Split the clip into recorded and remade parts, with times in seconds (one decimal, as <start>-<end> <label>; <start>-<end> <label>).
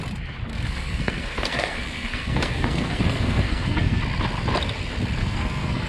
0.0-0.5 recorded; 0.5-4.0 remade; 4.0-5.2 recorded; 5.2-5.9 remade